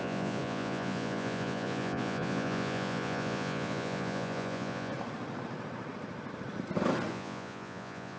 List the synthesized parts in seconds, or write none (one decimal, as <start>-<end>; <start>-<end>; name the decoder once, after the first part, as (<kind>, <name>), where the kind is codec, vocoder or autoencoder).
0.0-4.9 (vocoder, Vocos); 7.1-8.2